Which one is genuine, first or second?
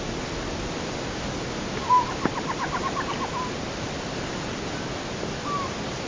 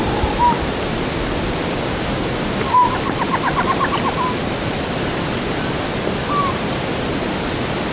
first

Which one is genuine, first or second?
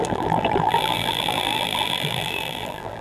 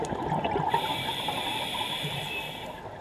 second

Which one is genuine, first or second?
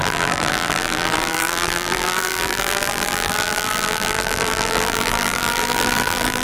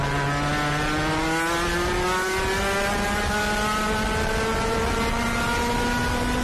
second